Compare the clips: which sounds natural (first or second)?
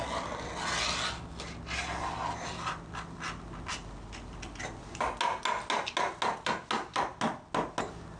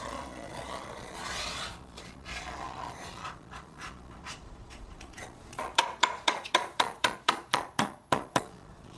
first